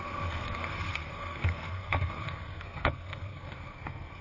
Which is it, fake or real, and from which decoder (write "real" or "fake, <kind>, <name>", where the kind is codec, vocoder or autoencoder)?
fake, codec, SNAC